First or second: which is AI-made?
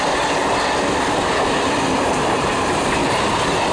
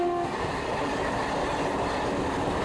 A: first